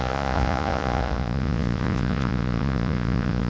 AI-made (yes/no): yes